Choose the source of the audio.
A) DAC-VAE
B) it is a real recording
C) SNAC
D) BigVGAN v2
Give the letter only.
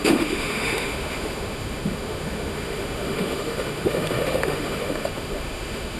A